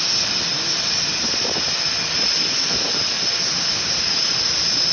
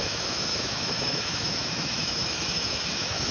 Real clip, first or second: first